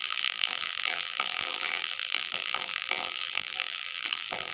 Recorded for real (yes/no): no